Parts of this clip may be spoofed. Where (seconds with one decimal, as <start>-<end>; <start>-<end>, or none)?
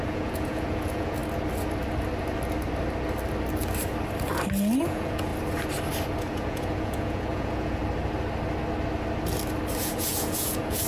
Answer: 0.0-1.2; 4.8-5.3; 6.2-7.8; 9.8-10.9